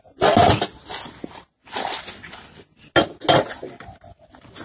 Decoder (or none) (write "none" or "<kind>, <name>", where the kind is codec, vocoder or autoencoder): none